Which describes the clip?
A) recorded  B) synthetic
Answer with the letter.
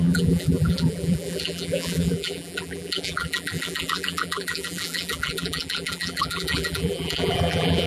B